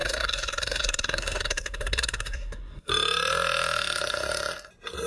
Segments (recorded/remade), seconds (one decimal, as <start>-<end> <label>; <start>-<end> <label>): 0.0-2.9 remade; 2.9-5.1 recorded